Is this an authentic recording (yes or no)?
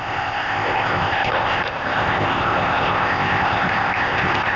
no